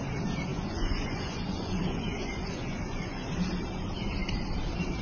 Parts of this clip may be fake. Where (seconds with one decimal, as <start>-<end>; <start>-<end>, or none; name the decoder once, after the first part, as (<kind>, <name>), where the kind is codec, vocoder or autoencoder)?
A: 0.5-3.3 (vocoder, Vocos)